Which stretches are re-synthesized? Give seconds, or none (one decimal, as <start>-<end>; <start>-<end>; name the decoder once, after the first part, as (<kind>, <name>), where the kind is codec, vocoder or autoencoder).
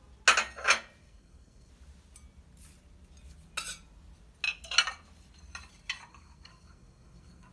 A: 1.0-1.7 (codec, SNAC); 6.1-7.5